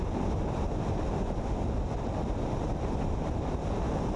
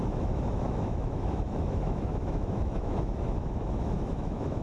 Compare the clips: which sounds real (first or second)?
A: first